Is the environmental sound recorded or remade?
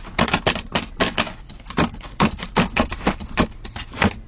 recorded